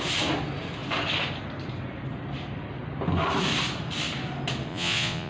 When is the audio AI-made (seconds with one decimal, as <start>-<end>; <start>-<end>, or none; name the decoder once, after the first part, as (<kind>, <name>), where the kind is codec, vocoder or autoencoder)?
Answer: 4.7-5.3 (vocoder, Vocos)